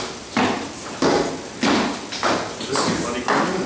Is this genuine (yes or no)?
yes